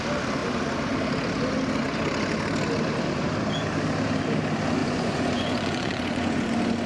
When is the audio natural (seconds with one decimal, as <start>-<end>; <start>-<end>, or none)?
0.0-4.8; 6.5-6.9